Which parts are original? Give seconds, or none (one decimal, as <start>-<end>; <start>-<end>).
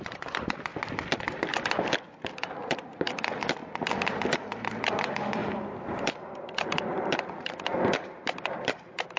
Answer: 0.7-2.3; 3.6-4.3